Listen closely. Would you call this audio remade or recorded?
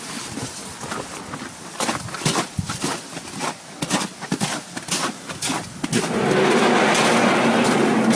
recorded